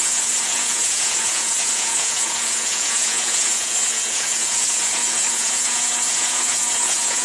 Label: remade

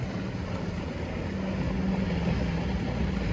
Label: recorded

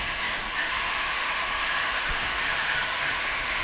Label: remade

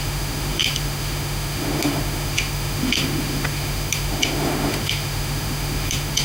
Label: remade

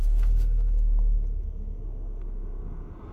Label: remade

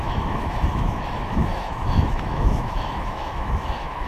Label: remade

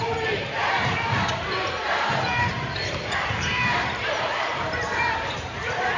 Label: remade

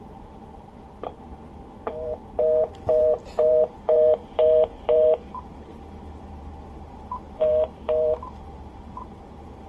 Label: remade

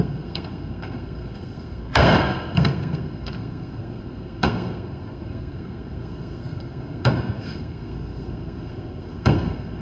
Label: remade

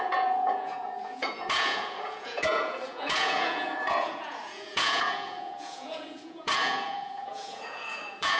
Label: remade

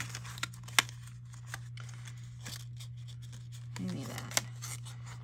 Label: recorded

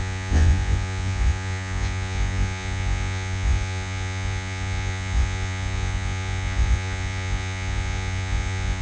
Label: remade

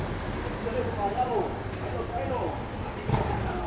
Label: recorded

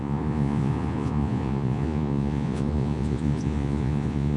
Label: remade